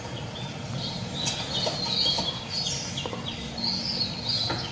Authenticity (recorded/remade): recorded